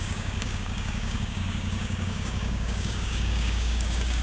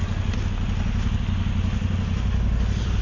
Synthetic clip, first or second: first